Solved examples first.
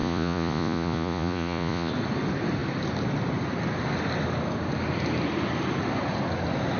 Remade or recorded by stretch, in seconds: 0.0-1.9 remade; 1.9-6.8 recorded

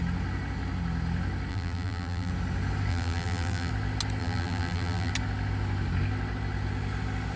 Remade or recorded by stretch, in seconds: 0.0-1.5 recorded; 1.5-2.3 remade; 2.3-2.9 recorded; 2.9-3.7 remade; 3.7-4.2 recorded; 4.2-5.1 remade; 5.1-7.4 recorded

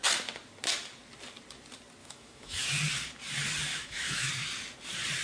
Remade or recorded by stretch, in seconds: 0.0-2.0 recorded; 2.0-2.8 remade; 2.8-3.7 recorded; 3.7-4.3 remade; 4.3-5.2 recorded

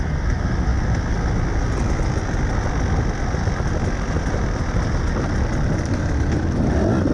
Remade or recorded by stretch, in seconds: 0.0-7.1 recorded

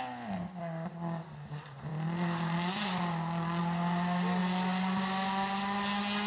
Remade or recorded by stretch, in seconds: 0.0-6.3 recorded

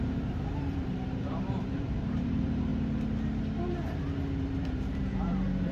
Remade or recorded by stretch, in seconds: 0.0-2.7 remade; 2.7-4.4 recorded; 4.4-5.7 remade